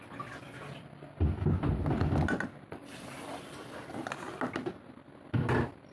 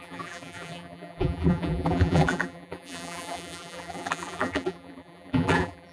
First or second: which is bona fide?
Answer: first